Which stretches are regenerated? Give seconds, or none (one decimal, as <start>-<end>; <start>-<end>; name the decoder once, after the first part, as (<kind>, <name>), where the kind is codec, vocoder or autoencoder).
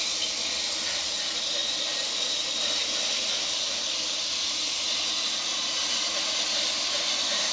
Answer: 1.6-2.4 (vocoder, BigVGAN v2)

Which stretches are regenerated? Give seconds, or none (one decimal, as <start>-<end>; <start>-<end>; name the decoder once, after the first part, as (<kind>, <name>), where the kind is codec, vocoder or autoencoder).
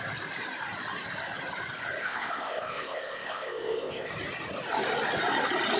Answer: 2.0-4.1 (codec, ZipCodec)